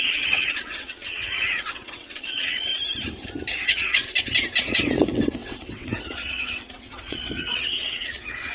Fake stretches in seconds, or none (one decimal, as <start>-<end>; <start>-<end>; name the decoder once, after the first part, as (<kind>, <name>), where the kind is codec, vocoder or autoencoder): 0.0-2.7 (vocoder, WaveNeXt); 3.5-4.0; 4.6-8.5